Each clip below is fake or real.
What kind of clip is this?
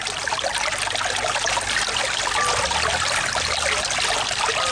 real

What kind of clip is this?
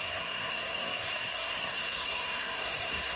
fake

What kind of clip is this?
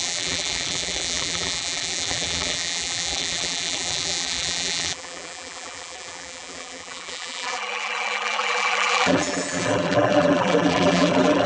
fake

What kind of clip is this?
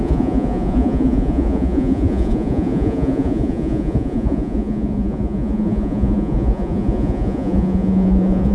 fake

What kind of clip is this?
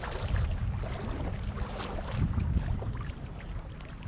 real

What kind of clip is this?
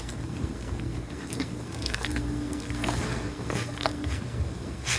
fake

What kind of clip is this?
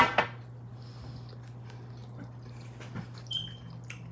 real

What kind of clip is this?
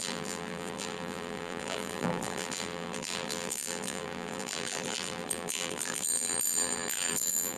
fake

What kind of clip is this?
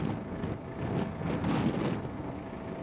real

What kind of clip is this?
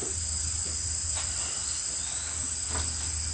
real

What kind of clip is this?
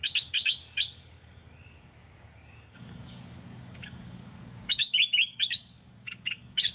fake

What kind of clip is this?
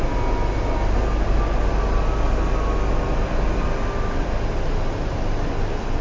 real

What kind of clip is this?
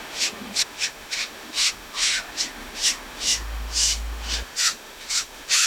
fake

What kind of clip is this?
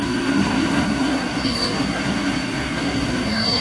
fake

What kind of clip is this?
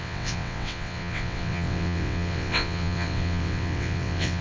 fake